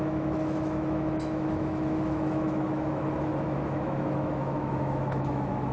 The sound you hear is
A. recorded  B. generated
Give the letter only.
B